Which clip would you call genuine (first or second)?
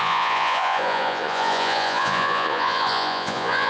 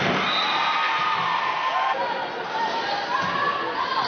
second